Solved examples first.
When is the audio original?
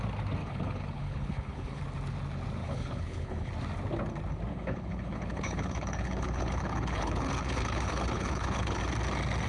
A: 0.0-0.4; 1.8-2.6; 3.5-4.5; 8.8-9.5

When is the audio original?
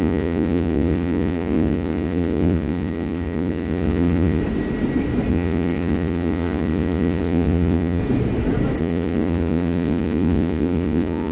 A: 4.4-5.3; 8.0-8.8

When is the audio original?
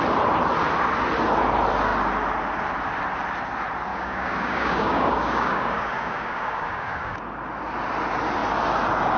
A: 0.0-3.9; 7.2-9.2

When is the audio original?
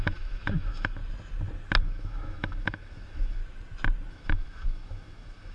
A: 1.0-1.8; 3.4-4.1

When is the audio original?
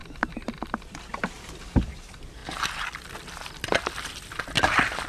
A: 0.0-5.1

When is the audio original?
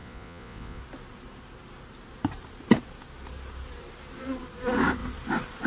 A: 0.8-5.7